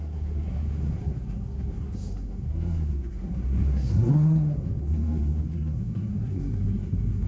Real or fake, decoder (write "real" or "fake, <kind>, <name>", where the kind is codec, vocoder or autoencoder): fake, codec, SNAC